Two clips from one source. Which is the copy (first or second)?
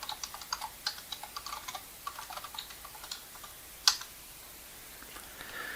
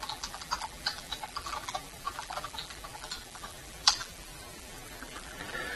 second